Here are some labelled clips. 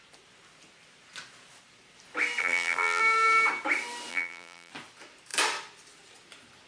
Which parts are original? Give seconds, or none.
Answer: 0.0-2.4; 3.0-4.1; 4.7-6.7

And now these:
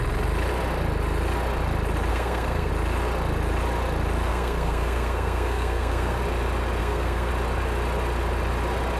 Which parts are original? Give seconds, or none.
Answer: 0.0-2.1; 2.7-4.3; 6.2-6.8; 7.3-9.0

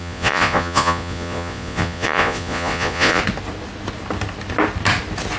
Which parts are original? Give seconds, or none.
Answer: 3.2-5.4

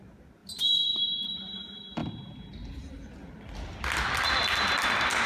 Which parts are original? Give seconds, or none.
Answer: 0.0-5.3

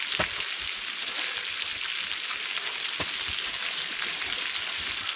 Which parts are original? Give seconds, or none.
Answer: 0.0-5.2

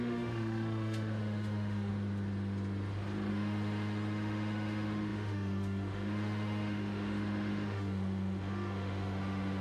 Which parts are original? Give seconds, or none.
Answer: 1.9-3.3